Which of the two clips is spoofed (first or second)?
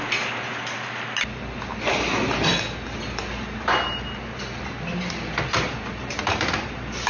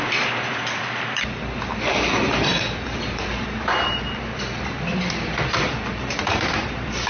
second